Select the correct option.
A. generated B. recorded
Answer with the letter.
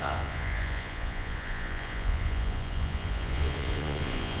A